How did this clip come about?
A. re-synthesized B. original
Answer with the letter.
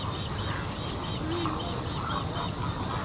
B